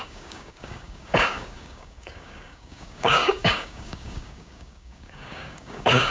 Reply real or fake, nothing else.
fake